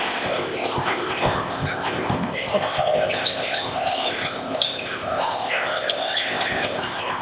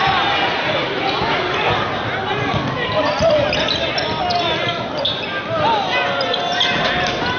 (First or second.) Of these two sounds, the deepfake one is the first